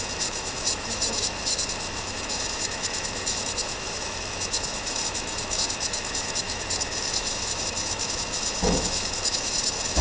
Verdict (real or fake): fake